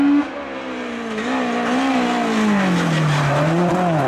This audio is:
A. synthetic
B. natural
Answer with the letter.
B